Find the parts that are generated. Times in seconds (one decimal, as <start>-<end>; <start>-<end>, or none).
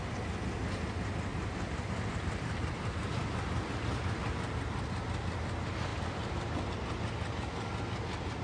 1.3-4.2; 5.9-6.7